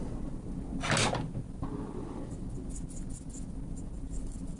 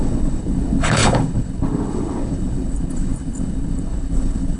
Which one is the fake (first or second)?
second